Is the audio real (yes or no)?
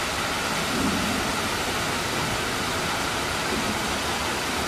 yes